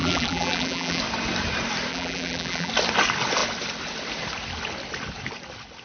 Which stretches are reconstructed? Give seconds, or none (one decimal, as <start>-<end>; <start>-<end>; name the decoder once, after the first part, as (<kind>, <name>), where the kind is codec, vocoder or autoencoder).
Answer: 0.0-1.0 (vocoder, BigVGAN v2); 1.9-2.7